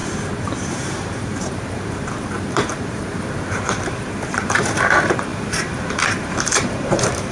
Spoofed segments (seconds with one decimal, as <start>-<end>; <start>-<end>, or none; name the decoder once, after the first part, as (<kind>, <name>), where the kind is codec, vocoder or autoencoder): 0.7-7.3 (vocoder, BigVGAN v2)